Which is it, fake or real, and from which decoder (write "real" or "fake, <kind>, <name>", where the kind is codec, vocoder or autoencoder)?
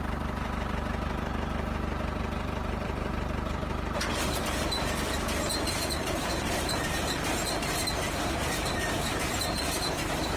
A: fake, vocoder, BigVGAN v2